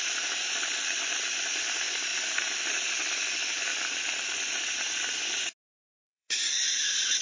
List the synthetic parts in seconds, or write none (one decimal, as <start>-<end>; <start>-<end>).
5.7-6.5